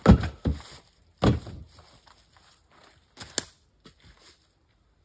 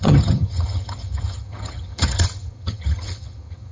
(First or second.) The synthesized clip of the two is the second